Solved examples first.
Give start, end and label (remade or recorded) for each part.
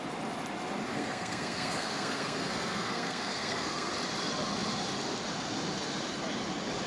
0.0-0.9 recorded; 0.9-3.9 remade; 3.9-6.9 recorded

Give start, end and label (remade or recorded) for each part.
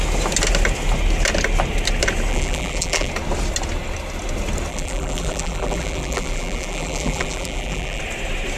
0.0-2.3 recorded; 2.3-3.1 remade; 3.1-4.7 recorded; 4.7-8.0 remade; 8.0-8.6 recorded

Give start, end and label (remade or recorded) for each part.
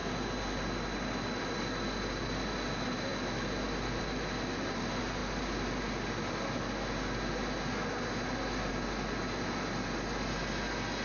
0.0-11.0 recorded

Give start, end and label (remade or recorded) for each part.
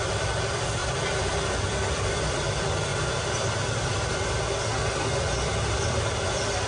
0.0-2.9 remade; 2.9-5.7 recorded; 5.7-6.7 remade